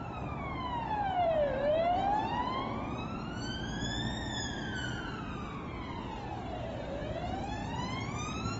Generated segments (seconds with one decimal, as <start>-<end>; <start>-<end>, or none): 0.0-2.4; 6.3-7.6; 8.1-8.6